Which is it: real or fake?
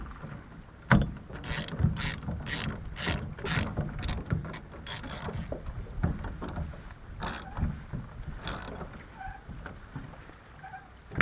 real